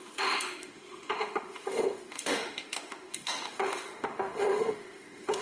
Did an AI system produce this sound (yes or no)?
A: yes